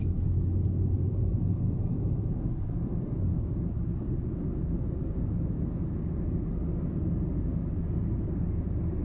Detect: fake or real real